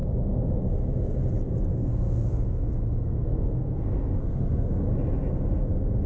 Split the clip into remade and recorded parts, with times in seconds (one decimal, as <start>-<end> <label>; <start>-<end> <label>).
0.0-1.7 recorded; 1.7-4.7 remade; 4.7-6.1 recorded